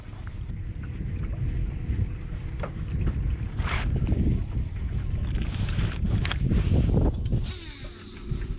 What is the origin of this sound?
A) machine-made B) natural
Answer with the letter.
B